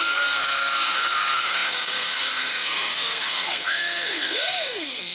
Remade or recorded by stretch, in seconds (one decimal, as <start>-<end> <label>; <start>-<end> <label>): 0.0-5.1 remade